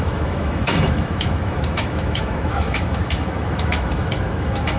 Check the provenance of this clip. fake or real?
fake